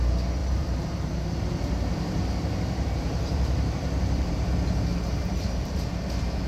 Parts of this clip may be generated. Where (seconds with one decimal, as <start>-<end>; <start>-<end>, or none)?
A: 0.4-4.3; 4.9-5.8